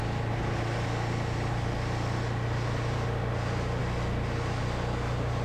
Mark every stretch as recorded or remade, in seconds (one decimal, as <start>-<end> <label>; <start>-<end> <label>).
0.0-5.4 recorded